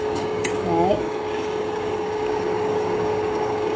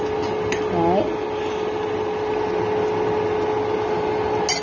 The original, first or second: second